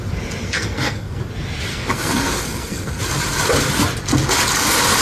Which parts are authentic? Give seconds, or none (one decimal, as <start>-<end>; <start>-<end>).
0.0-0.4; 1.2-1.7; 3.0-5.0

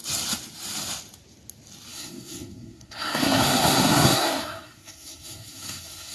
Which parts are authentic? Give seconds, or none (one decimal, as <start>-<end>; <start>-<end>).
0.0-1.9